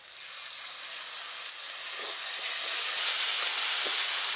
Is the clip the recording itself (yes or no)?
yes